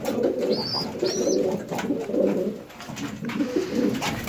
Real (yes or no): yes